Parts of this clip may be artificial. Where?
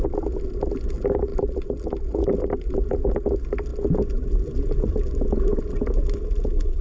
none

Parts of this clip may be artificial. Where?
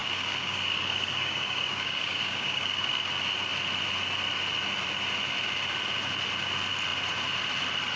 0.0-3.1 (codec, DAC)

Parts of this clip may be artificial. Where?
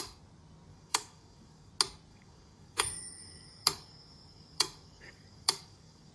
0.7-1.7 (codec, DAC); 2.1-6.1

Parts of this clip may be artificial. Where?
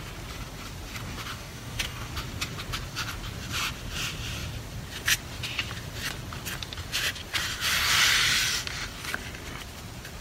1.3-2.1 (codec, DAC)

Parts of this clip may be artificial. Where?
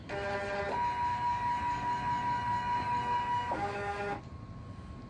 1.1-4.2 (codec, DAC)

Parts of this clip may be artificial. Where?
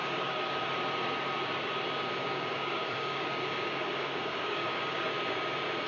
0.0-0.7 (codec, DAC); 2.2-5.1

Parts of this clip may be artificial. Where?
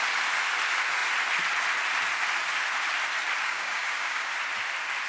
3.4-4.3 (codec, DAC)